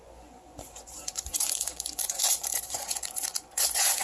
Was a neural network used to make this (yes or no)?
yes